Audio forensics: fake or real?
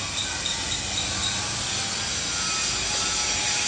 real